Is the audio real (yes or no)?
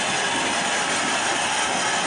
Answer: yes